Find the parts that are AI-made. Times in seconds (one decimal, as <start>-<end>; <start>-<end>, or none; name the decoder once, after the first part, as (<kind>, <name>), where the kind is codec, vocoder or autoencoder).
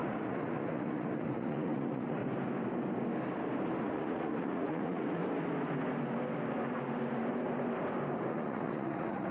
0.0-2.2 (vocoder, Vocos); 3.8-5.2; 8.3-9.3